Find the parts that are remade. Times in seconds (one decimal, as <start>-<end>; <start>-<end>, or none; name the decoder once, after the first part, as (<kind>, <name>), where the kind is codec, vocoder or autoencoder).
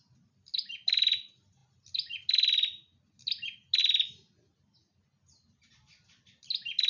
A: none